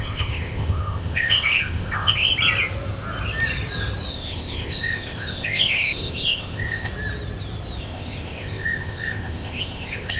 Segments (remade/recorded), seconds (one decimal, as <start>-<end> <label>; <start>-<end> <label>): 0.0-2.3 remade; 2.3-4.1 recorded; 4.1-6.9 remade; 6.9-7.8 recorded; 7.8-10.2 remade